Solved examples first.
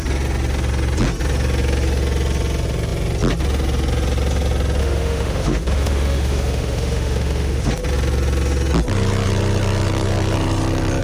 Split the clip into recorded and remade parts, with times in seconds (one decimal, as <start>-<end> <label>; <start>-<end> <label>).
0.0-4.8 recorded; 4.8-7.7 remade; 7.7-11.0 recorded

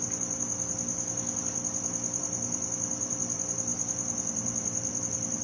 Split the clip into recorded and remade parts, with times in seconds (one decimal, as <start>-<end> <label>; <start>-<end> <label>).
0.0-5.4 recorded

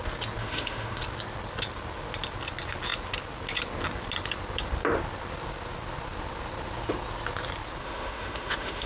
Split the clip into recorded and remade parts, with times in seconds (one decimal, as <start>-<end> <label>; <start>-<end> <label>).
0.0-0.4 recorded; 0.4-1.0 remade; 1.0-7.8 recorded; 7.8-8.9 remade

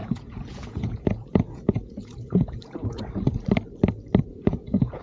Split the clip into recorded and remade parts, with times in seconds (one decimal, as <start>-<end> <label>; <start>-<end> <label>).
0.0-3.0 remade; 3.0-4.3 recorded; 4.3-5.0 remade